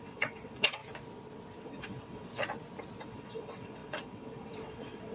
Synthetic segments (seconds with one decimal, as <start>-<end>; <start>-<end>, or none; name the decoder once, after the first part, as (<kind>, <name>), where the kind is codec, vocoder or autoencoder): 0.0-0.8 (vocoder, WaveNeXt); 1.6-2.3; 3.0-5.1